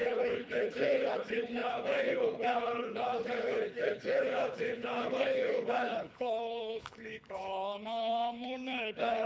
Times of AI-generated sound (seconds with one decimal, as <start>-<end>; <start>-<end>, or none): 0.0-9.3